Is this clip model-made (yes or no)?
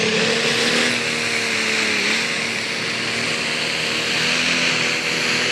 no